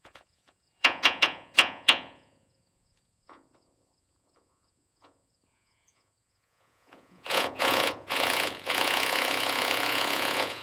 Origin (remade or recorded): remade